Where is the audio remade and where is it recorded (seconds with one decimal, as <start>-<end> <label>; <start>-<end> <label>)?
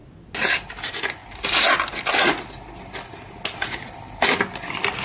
0.0-5.0 recorded